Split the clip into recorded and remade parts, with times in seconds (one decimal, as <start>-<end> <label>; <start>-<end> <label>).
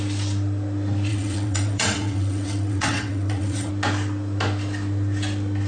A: 0.0-1.1 recorded; 1.1-3.7 remade; 3.7-5.7 recorded